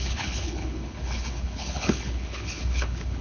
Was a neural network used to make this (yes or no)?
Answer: yes